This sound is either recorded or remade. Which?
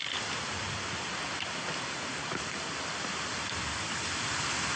recorded